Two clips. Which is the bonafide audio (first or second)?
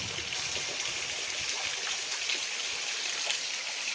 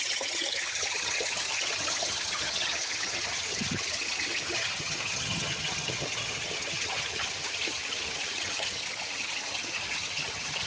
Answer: first